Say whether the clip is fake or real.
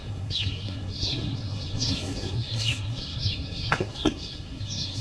fake